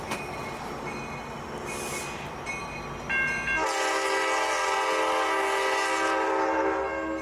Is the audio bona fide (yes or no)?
yes